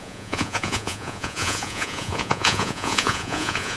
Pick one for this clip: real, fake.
fake